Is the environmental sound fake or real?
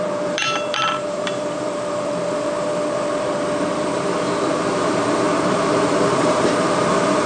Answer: fake